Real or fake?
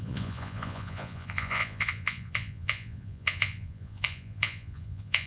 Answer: fake